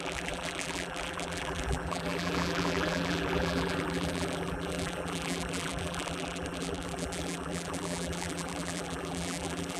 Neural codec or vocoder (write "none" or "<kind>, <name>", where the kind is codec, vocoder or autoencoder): vocoder, BigVGAN v2